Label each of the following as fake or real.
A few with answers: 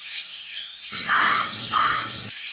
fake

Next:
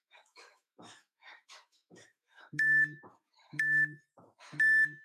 fake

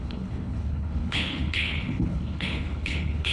fake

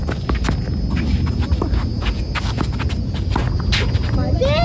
real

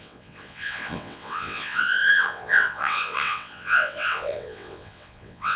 fake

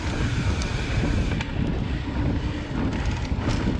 real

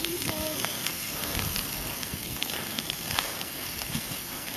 fake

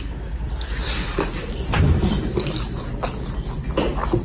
real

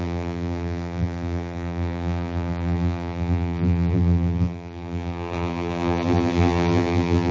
fake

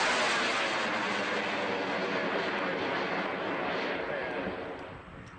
real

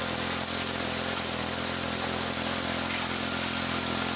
real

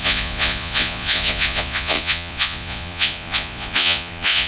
fake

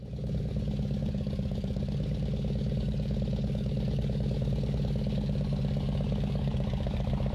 fake